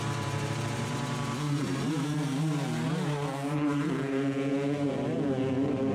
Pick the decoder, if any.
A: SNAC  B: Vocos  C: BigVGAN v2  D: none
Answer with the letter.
C